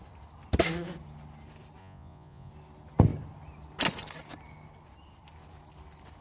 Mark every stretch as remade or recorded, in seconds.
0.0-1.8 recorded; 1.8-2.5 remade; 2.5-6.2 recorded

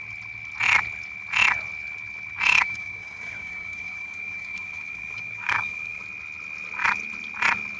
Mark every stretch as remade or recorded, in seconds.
0.0-2.5 recorded; 2.5-6.0 remade; 6.0-7.8 recorded

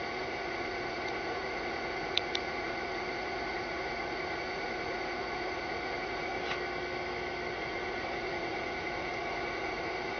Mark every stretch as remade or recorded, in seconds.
0.0-6.3 remade; 6.3-7.6 recorded; 7.6-10.2 remade